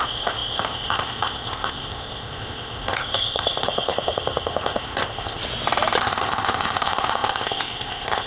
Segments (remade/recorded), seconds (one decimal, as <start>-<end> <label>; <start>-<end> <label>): 0.0-5.4 remade; 5.4-6.0 recorded; 6.0-8.3 remade